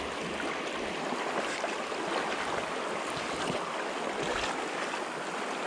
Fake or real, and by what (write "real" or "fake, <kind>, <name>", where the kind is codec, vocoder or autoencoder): real